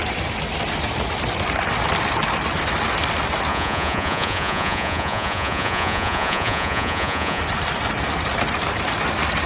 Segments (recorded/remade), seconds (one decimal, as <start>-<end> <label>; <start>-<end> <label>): 0.0-3.5 recorded; 3.5-7.4 remade; 7.4-9.5 recorded